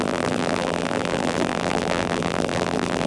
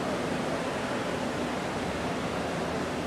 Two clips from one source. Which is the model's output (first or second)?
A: first